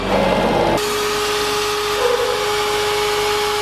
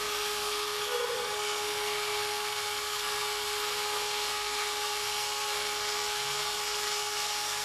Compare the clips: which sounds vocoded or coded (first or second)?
second